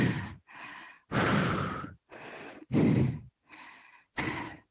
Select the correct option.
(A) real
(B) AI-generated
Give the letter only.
A